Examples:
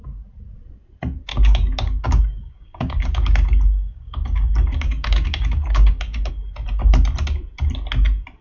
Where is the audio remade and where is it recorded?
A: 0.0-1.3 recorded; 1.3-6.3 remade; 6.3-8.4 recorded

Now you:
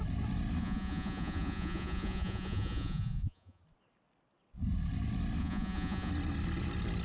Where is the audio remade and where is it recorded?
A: 0.0-0.6 recorded; 0.6-3.6 remade; 3.6-5.4 recorded; 5.4-6.1 remade; 6.1-7.0 recorded

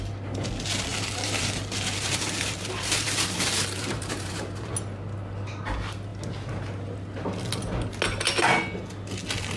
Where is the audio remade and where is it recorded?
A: 0.0-0.9 recorded; 0.9-4.7 remade; 4.7-9.6 recorded

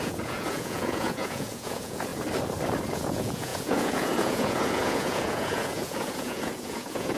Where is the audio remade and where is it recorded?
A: 0.0-2.1 remade; 2.1-2.9 recorded; 2.9-7.2 remade

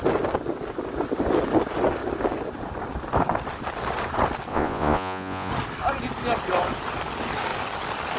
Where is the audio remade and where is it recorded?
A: 0.0-4.5 recorded; 4.5-5.5 remade; 5.5-8.2 recorded

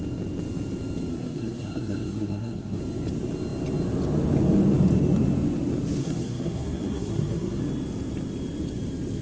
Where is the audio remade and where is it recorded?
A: 0.0-1.1 recorded; 1.1-2.8 remade; 2.8-6.0 recorded; 6.0-7.6 remade; 7.6-9.2 recorded

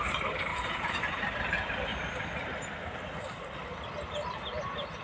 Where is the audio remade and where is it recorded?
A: 0.0-0.5 recorded; 0.5-1.2 remade; 1.2-5.0 recorded